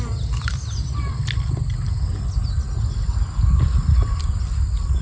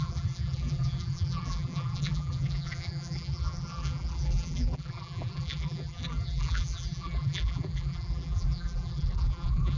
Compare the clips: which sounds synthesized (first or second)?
second